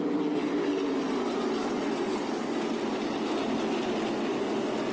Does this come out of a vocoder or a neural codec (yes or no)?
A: no